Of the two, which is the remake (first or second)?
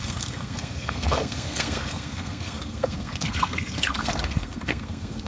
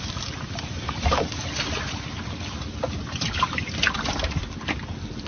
first